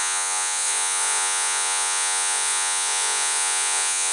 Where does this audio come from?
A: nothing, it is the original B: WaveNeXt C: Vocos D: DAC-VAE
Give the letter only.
C